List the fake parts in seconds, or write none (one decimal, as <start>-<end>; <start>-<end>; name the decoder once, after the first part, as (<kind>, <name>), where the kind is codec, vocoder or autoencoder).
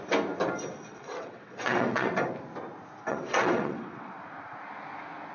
0.9-2.1 (vocoder, WaveNeXt); 3.1-4.2